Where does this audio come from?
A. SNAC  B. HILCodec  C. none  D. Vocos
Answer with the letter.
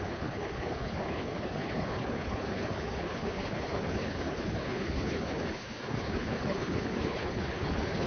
B